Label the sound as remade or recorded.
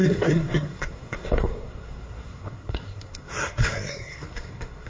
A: remade